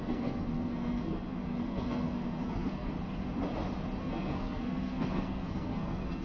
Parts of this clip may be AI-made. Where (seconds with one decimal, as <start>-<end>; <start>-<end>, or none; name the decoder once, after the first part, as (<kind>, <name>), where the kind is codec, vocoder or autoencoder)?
0.0-2.9 (codec, SNAC); 4.0-6.2